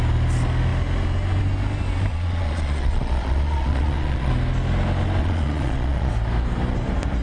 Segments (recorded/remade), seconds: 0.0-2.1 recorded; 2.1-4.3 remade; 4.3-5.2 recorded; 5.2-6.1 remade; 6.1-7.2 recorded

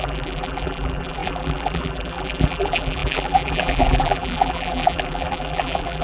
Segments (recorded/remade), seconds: 0.0-6.0 remade

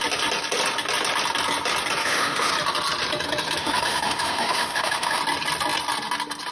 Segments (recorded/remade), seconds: 0.0-2.0 recorded; 2.0-2.5 remade; 2.5-3.6 recorded; 3.6-5.2 remade; 5.2-6.5 recorded

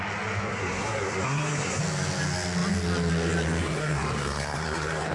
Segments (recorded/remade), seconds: 0.0-0.5 recorded; 0.5-1.8 remade; 1.8-3.6 recorded; 3.6-5.1 remade

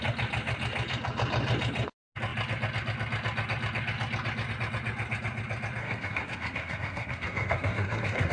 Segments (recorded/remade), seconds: 0.0-5.8 recorded; 5.8-8.3 remade